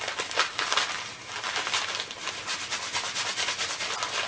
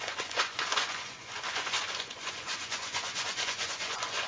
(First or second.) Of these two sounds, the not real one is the second